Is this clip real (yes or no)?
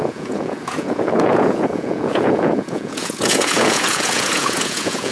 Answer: no